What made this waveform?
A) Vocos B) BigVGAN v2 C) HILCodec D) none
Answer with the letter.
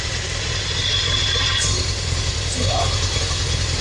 B